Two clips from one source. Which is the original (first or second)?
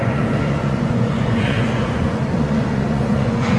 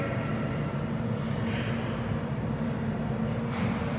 second